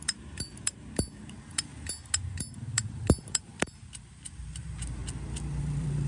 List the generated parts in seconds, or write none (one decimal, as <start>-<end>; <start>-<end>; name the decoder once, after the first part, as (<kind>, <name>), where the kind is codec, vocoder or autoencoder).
0.0-1.7 (vocoder, BigVGAN v2); 2.2-5.0; 5.6-6.1